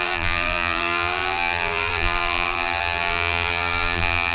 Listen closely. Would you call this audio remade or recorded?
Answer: remade